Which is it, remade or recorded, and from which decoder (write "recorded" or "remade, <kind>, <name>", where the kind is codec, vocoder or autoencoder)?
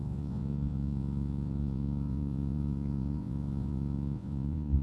remade, vocoder, Vocos